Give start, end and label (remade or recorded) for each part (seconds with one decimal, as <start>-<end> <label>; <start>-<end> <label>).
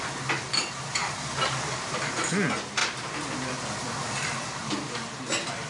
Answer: 0.0-5.7 recorded